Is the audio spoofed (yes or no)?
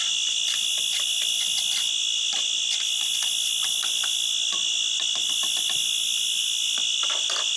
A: no